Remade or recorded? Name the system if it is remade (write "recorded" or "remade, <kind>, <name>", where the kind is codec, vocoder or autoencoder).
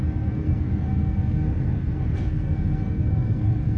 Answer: remade, codec, SNAC